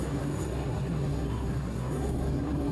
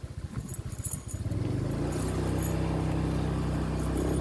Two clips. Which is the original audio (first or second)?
second